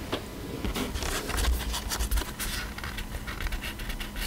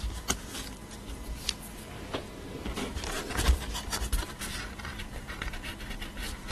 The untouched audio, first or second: first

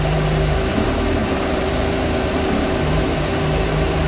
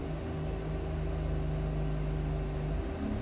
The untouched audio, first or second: second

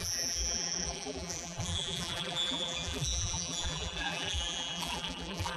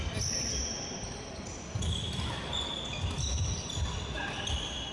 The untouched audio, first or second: second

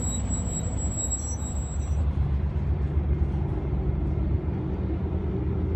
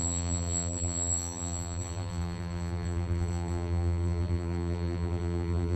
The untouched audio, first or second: first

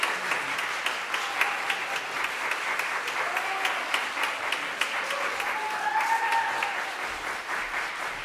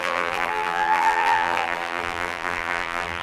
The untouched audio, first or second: first